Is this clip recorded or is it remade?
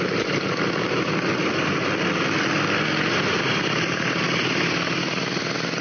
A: recorded